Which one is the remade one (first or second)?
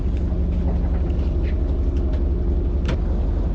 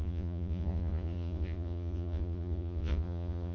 second